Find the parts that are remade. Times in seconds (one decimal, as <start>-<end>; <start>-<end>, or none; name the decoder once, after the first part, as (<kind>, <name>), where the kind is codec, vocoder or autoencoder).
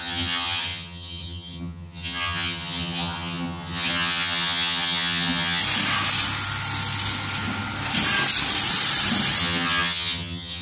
0.0-5.6 (vocoder, HiFi-GAN); 9.4-10.6